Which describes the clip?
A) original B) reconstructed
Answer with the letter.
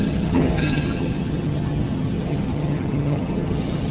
B